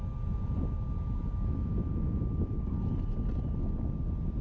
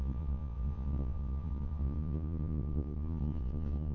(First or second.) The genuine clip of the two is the first